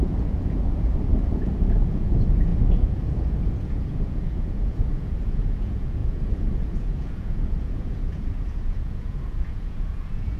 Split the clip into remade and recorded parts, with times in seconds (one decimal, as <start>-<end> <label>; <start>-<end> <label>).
0.0-10.4 remade

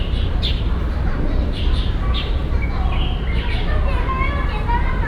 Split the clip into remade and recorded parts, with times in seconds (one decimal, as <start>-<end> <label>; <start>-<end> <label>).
0.0-2.4 remade; 2.4-4.0 recorded; 4.0-5.1 remade

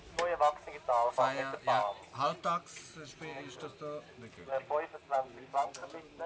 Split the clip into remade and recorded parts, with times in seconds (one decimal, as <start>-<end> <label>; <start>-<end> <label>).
0.0-6.3 recorded

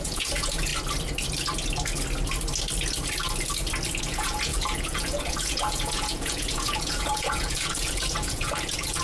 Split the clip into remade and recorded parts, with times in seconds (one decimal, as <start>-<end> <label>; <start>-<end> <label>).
0.0-0.7 remade; 0.7-4.0 recorded; 4.0-9.0 remade